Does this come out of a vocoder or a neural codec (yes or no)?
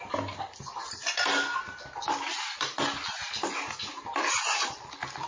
no